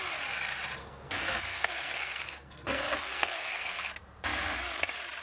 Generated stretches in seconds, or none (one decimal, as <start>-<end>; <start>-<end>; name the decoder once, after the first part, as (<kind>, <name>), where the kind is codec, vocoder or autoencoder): 0.8-3.9 (codec, SNAC)